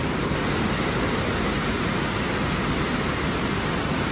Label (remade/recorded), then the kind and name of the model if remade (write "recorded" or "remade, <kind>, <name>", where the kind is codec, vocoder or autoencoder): recorded